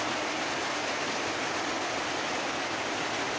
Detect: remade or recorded recorded